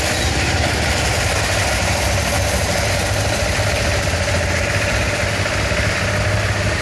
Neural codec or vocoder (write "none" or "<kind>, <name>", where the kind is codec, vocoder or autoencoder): vocoder, BigVGAN v2